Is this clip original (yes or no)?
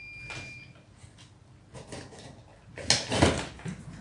yes